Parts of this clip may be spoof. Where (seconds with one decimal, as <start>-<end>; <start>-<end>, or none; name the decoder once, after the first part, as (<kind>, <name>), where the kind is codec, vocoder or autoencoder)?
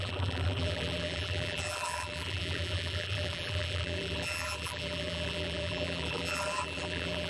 0.0-7.3 (vocoder, BigVGAN v2)